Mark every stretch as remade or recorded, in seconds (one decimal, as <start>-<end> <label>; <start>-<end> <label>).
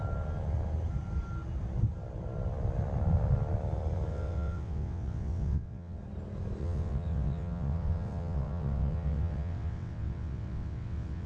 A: 0.0-4.1 recorded; 4.1-6.0 remade; 6.0-6.6 recorded; 6.6-11.3 remade